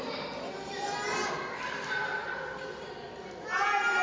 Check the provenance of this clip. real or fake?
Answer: real